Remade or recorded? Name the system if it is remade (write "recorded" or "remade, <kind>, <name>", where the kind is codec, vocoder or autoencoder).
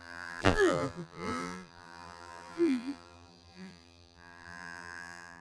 remade, vocoder, BigVGAN v2